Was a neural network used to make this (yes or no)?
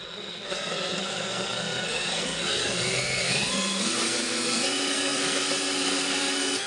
yes